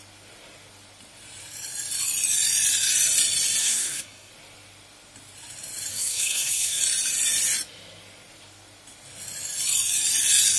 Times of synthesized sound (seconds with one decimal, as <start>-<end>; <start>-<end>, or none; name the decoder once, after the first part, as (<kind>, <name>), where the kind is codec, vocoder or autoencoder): 3.6-4.3 (codec, SNAC); 5.9-6.8